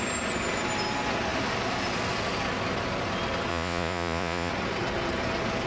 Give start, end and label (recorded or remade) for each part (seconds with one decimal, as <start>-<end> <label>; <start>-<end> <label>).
0.0-3.5 recorded; 3.5-4.5 remade; 4.5-5.7 recorded